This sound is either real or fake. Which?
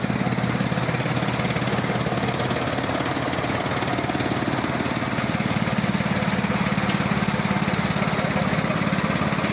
real